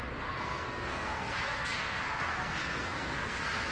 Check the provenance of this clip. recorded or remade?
remade